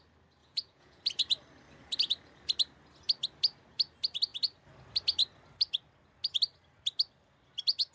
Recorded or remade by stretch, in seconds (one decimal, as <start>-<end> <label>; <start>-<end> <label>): 0.0-0.4 recorded; 0.4-1.0 remade; 1.0-7.9 recorded

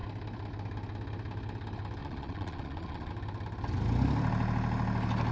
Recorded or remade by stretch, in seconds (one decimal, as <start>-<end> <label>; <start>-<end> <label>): 0.0-2.0 recorded; 2.0-3.1 remade; 3.1-5.3 recorded

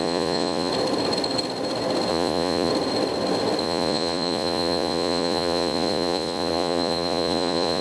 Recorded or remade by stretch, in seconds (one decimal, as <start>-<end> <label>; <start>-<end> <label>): 0.0-0.7 remade; 0.7-2.1 recorded; 2.1-2.7 remade; 2.7-3.6 recorded; 3.6-7.8 remade

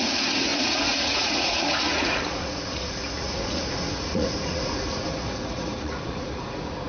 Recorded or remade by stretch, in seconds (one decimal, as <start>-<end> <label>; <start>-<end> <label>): 0.0-6.9 remade

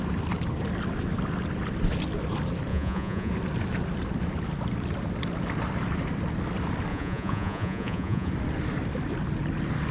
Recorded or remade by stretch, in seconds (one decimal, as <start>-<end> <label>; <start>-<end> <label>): 0.0-2.7 recorded; 2.7-3.3 remade; 3.3-6.9 recorded; 6.9-8.3 remade; 8.3-9.9 recorded

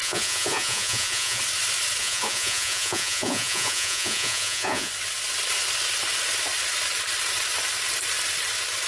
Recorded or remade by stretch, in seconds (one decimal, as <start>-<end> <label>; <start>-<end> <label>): 0.0-1.4 remade; 1.4-2.0 recorded; 2.0-4.9 remade; 4.9-8.9 recorded

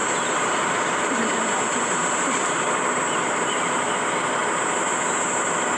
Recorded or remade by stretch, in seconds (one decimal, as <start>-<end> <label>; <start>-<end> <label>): 0.0-5.8 recorded